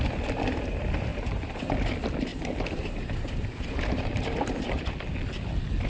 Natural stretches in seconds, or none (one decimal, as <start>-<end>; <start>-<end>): 0.0-1.1; 1.6-2.3; 4.9-5.9